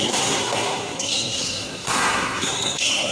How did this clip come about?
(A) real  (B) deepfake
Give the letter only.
B